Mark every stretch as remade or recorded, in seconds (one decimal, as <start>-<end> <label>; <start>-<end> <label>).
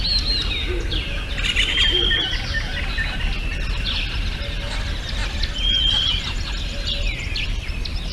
0.0-8.1 recorded